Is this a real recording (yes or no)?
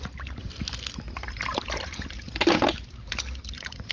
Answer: yes